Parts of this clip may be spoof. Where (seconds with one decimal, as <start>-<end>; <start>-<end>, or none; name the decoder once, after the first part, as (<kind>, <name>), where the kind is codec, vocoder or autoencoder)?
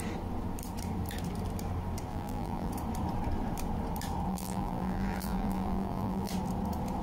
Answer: 2.1-2.7 (vocoder, BigVGAN v2); 4.3-6.3